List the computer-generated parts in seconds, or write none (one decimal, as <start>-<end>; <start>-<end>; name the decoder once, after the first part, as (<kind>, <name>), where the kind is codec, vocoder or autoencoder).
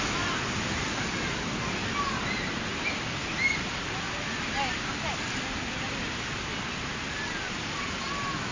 none